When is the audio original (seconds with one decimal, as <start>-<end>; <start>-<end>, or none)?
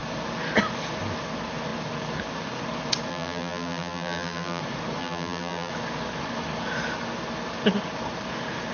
0.0-3.1; 4.6-5.0; 5.7-8.7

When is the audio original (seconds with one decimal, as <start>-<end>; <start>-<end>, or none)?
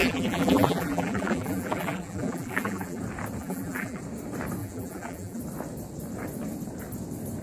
3.0-3.4; 4.0-4.6; 5.4-7.4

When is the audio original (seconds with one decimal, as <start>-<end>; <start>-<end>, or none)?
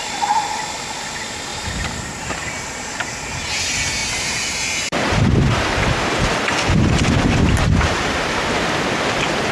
0.0-1.5; 3.0-4.0; 6.2-7.4; 8.4-9.5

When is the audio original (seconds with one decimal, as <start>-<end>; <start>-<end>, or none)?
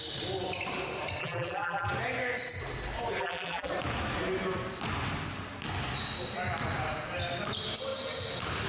0.0-1.2; 1.9-3.2; 3.7-8.7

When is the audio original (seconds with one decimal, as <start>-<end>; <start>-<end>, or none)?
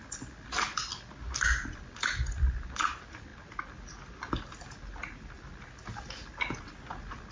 0.0-7.3